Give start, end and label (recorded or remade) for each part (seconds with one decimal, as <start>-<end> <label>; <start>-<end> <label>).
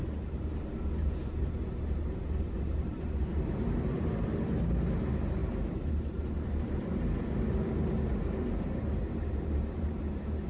0.0-0.7 remade; 0.7-1.3 recorded; 1.3-10.5 remade